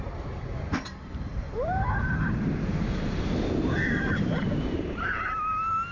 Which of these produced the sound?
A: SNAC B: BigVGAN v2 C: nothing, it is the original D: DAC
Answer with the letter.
B